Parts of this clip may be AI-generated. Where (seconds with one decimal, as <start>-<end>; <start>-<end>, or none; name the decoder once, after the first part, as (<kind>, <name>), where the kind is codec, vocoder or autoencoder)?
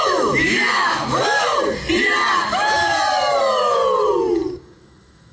0.0-1.5 (autoencoder, DAC-VAE); 2.4-2.9; 3.4-3.8; 4.6-5.3